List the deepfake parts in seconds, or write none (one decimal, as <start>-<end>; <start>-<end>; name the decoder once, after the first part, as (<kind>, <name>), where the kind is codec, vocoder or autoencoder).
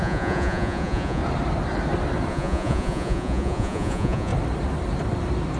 0.0-1.2 (vocoder, Vocos); 2.3-4.3